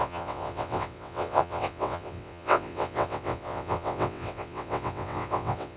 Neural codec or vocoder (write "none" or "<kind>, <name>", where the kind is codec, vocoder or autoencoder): vocoder, WaveNeXt